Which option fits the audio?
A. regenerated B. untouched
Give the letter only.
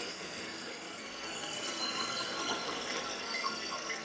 A